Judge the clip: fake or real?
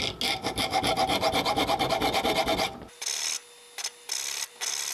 real